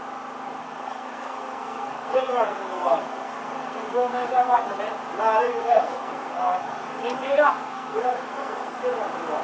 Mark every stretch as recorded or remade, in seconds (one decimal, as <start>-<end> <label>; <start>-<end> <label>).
0.0-0.6 recorded; 0.6-4.8 remade; 4.8-5.4 recorded; 5.4-8.8 remade; 8.8-9.4 recorded

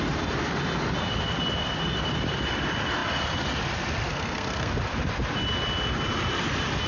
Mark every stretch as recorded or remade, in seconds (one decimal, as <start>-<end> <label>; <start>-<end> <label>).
0.0-4.1 recorded; 4.1-4.7 remade; 4.7-6.9 recorded